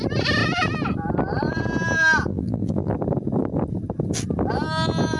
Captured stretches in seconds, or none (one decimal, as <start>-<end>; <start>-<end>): 0.0-2.3; 2.9-5.2